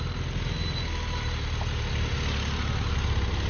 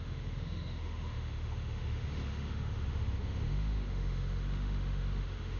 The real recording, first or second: first